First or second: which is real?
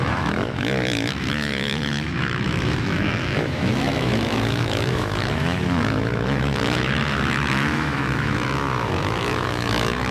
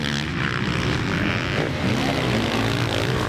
second